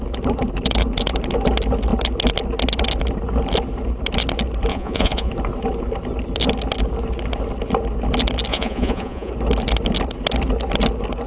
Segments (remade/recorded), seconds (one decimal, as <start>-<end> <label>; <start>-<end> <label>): 0.0-4.7 recorded; 4.7-5.3 remade; 5.3-8.5 recorded; 8.5-9.3 remade; 9.3-11.3 recorded